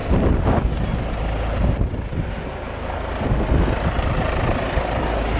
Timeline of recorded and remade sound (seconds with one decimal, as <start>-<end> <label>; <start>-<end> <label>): 0.0-5.4 recorded